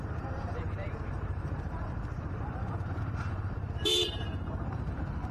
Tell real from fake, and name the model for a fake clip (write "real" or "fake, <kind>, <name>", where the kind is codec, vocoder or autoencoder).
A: fake, vocoder, BigVGAN v2